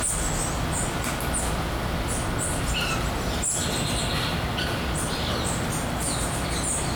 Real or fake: real